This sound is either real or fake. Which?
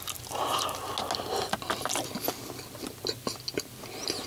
real